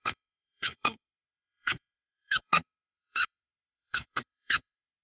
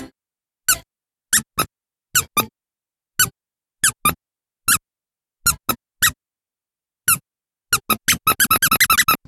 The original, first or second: second